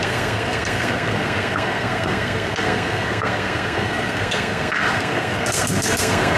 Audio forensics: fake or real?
fake